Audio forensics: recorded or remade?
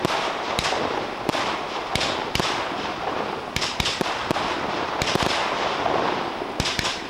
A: remade